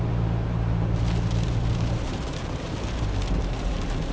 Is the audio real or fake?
fake